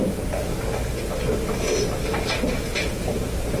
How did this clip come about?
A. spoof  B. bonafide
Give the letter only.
B